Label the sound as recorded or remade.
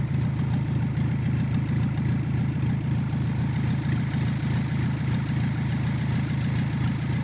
recorded